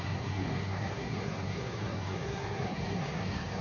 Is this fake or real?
fake